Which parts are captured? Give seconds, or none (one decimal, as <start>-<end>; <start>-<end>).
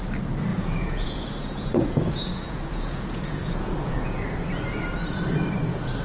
0.0-0.5; 4.1-6.0